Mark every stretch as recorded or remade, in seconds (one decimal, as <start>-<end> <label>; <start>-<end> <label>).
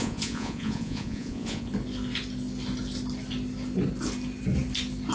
0.0-1.7 remade; 1.7-5.1 recorded